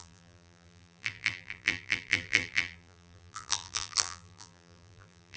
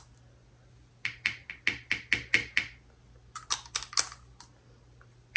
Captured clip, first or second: second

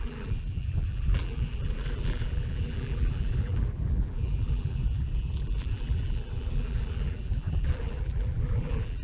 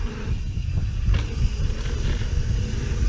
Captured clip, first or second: second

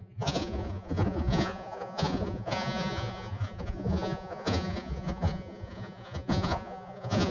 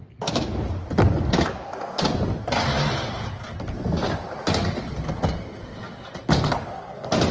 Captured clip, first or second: second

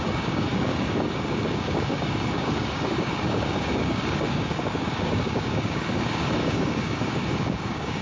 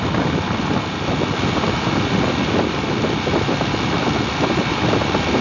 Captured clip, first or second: second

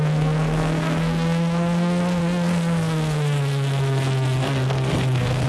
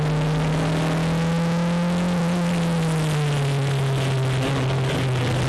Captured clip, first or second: second